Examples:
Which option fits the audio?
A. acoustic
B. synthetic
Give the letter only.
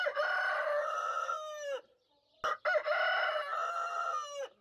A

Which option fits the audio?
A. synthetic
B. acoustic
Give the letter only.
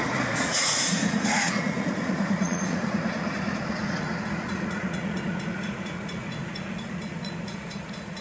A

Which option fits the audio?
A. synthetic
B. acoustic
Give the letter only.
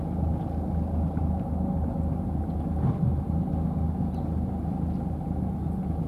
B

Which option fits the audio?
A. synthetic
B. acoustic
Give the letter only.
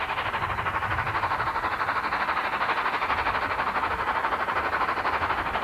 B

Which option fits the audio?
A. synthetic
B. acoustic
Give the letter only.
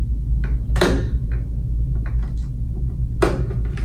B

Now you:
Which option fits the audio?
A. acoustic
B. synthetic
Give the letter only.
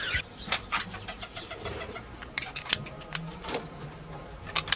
B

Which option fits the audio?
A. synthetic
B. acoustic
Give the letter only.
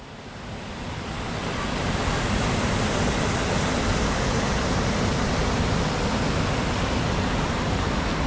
B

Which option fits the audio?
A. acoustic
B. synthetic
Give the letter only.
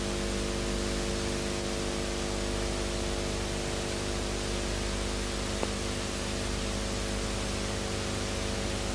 A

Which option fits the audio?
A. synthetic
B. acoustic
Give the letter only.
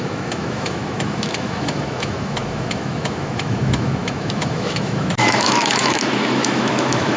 A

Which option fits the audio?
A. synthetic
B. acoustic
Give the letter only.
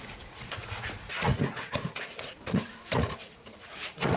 A